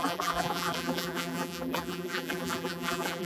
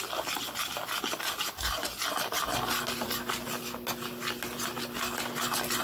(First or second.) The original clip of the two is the second